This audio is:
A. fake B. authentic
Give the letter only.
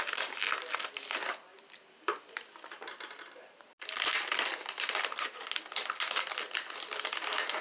B